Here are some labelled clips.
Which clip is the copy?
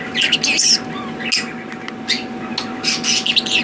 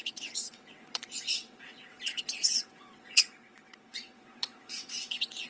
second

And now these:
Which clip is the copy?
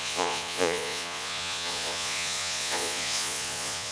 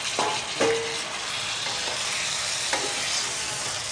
first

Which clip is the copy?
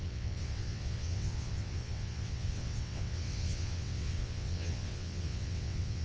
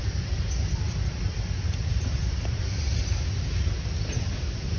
first